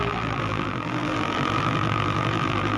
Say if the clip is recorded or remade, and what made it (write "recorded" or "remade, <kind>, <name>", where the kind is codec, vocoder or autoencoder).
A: remade, vocoder, BigVGAN v2